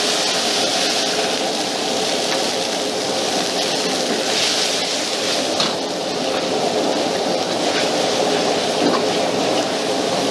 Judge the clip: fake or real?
real